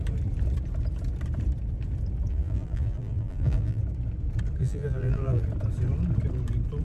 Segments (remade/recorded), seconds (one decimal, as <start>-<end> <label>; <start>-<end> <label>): 0.0-2.3 recorded; 2.3-3.8 remade; 3.8-4.6 recorded; 4.6-5.4 remade; 5.4-6.8 recorded